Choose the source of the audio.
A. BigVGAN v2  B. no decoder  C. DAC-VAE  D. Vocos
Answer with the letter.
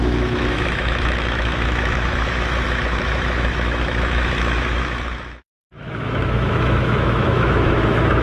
C